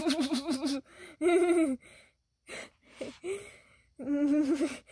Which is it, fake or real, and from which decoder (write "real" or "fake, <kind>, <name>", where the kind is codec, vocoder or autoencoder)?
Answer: fake, vocoder, BigVGAN v2